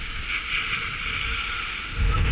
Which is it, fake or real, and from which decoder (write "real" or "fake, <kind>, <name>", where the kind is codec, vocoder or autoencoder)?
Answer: real